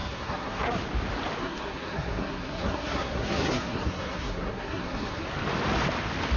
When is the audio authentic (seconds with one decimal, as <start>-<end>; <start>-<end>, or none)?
0.7-1.4; 5.2-6.4